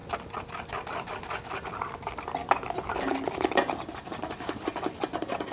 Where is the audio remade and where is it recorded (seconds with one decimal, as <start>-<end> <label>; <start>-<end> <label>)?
0.0-5.5 recorded